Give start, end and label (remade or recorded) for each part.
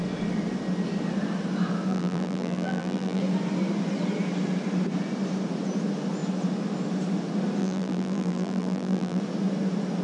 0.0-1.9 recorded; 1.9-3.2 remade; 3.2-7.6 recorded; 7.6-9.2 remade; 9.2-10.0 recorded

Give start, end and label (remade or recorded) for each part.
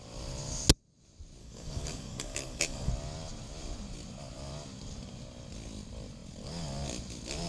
0.0-1.4 recorded; 1.4-2.9 remade; 2.9-7.5 recorded